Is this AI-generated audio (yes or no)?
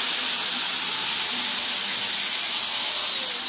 no